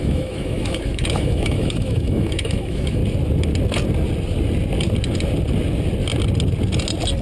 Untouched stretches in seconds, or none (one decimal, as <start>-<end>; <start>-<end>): 3.0-7.2